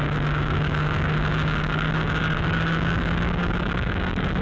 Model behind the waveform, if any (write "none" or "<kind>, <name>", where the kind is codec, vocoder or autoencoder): codec, DAC